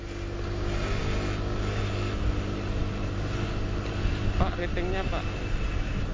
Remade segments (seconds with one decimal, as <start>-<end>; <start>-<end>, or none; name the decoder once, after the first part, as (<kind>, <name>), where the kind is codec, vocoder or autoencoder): none